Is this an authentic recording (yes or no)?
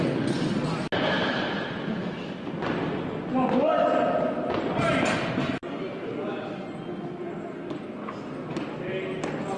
yes